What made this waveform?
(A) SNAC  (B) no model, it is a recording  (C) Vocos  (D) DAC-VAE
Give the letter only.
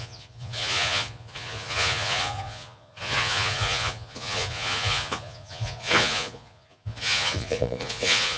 C